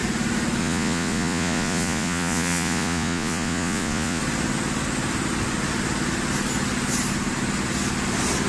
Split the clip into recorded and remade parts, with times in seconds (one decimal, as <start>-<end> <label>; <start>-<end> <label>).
0.0-0.6 recorded; 0.6-4.2 remade; 4.2-8.5 recorded

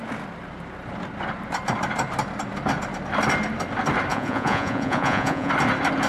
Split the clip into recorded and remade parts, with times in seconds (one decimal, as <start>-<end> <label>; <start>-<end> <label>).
0.0-4.1 recorded; 4.1-5.5 remade; 5.5-6.1 recorded

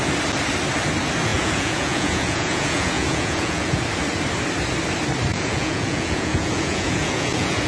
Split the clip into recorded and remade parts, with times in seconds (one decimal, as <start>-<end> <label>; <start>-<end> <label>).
0.0-1.3 recorded; 1.3-3.8 remade; 3.8-5.3 recorded; 5.3-7.7 remade

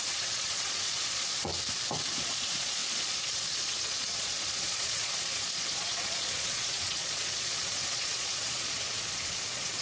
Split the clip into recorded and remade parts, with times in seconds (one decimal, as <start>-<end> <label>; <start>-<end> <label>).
0.0-1.5 remade; 1.5-2.1 recorded; 2.1-9.8 remade